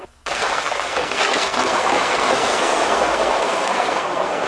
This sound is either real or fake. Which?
fake